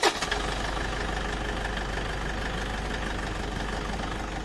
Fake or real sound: real